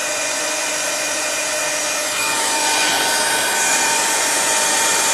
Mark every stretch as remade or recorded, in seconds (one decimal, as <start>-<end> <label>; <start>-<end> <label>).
0.0-3.1 remade; 3.1-3.7 recorded; 3.7-5.1 remade